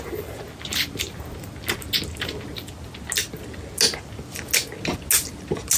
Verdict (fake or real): real